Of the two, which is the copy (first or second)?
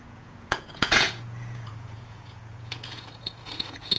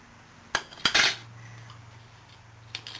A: first